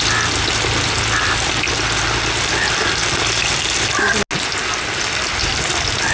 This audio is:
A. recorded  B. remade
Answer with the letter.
A